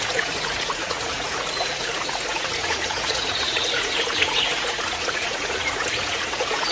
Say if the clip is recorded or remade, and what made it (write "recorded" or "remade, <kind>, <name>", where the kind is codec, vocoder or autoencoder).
remade, vocoder, Vocos